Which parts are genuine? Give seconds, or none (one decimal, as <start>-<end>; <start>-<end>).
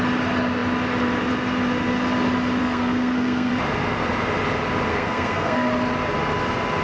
0.0-2.6; 3.5-4.9; 5.7-6.8